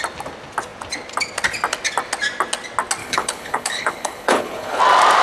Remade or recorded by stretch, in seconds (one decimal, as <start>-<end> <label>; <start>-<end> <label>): 0.0-3.0 recorded; 3.0-4.8 remade; 4.8-5.2 recorded